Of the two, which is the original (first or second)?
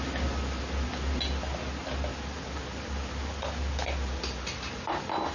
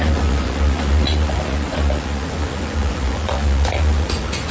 first